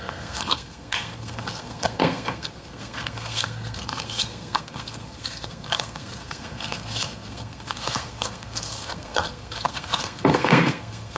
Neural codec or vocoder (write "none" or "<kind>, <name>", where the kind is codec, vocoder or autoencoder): codec, SNAC